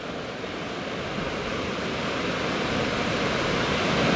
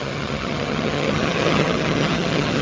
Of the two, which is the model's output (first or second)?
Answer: second